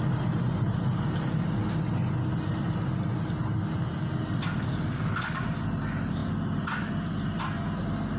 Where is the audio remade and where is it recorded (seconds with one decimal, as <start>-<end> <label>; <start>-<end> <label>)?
0.0-3.9 recorded; 3.9-5.6 remade; 5.6-6.2 recorded; 6.2-7.4 remade; 7.4-8.2 recorded